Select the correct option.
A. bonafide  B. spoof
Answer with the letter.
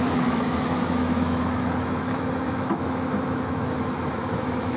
B